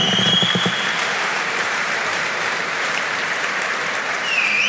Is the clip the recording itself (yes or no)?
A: no